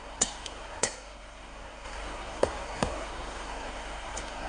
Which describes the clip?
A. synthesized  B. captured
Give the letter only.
A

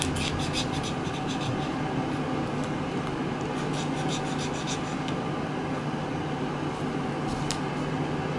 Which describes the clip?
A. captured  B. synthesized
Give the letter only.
A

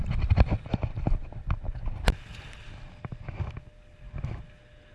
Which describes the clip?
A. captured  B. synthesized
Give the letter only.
A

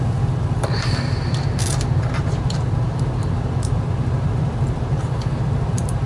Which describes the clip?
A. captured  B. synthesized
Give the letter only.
B